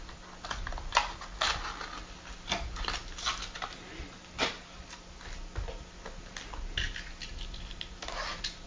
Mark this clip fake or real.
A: real